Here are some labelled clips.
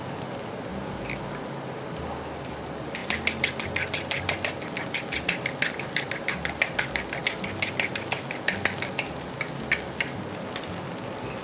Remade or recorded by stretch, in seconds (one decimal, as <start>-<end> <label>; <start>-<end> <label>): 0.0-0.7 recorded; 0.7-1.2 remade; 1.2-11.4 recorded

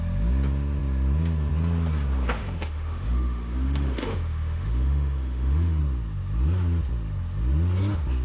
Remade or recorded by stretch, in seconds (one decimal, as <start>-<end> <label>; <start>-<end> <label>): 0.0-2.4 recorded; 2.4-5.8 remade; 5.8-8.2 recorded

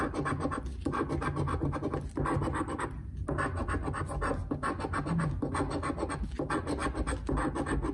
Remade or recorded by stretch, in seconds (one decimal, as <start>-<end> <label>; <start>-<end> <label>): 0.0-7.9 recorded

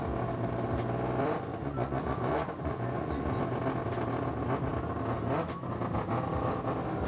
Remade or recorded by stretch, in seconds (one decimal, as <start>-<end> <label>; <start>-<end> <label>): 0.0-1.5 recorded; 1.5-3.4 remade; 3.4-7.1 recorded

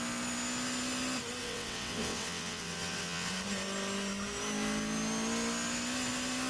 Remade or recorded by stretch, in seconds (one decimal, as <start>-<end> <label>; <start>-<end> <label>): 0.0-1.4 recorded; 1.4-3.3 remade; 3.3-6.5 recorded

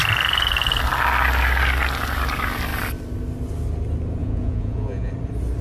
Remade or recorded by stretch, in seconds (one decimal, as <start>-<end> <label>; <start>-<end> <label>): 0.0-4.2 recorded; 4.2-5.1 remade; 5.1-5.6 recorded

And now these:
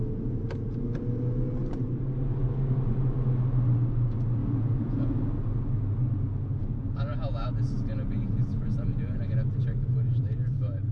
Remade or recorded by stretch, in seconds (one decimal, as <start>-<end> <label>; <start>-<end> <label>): 0.0-4.4 recorded; 4.4-5.2 remade; 5.2-6.6 recorded; 6.6-9.2 remade; 9.2-9.7 recorded; 9.7-10.9 remade